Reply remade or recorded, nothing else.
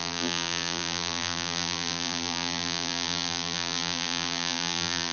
remade